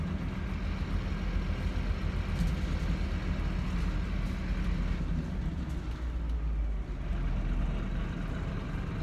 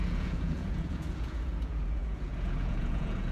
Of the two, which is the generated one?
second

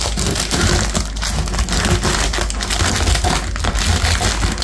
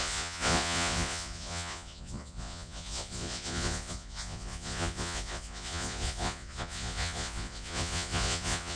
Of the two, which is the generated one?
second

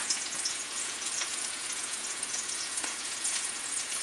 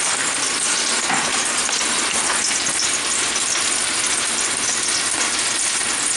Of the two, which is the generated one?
first